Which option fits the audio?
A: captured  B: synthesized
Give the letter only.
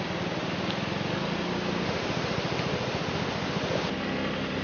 A